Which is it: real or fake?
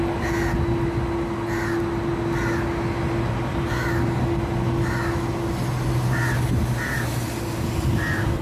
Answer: real